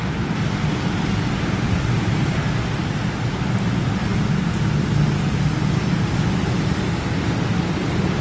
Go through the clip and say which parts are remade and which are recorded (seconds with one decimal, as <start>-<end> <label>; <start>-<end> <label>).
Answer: 0.0-8.2 recorded